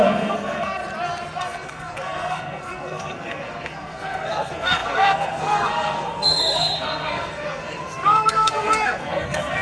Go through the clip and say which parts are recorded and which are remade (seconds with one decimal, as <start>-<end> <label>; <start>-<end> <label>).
0.0-0.8 remade; 0.8-1.4 recorded; 1.4-9.6 remade